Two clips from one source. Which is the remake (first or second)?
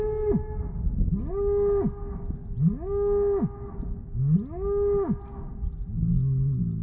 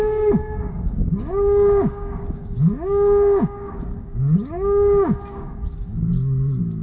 second